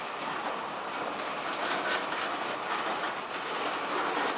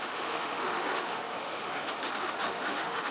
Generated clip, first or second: second